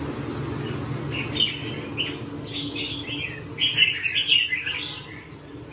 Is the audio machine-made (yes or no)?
no